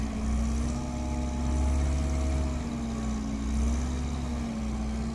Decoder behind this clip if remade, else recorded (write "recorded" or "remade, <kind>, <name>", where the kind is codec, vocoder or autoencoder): recorded